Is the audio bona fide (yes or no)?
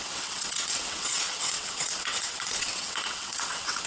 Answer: no